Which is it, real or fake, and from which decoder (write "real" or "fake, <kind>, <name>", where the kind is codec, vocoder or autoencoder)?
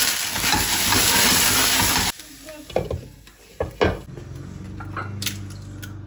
real